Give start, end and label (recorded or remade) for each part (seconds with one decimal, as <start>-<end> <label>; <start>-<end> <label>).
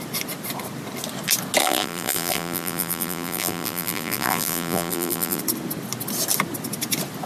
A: 0.0-1.6 recorded; 1.6-5.4 remade; 5.4-7.3 recorded